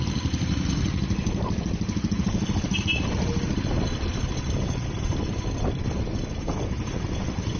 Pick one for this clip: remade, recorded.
recorded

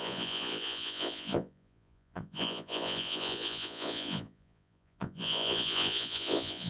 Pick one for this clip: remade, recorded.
remade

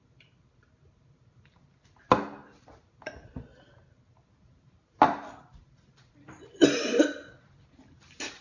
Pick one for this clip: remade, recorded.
recorded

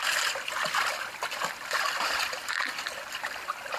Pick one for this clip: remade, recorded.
recorded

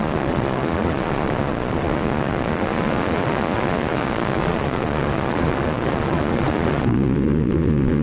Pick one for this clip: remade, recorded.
remade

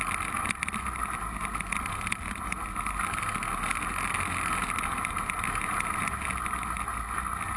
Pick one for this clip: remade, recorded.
recorded